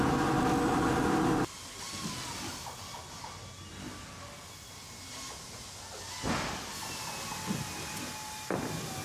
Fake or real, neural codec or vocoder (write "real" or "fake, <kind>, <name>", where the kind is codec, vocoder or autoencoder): real